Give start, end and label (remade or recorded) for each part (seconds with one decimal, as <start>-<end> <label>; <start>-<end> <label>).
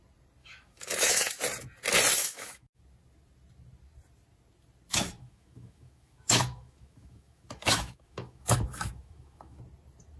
0.0-0.4 recorded; 0.4-1.4 remade; 1.4-2.2 recorded; 2.2-2.8 remade; 2.8-4.9 recorded; 4.9-9.6 remade; 9.6-10.2 recorded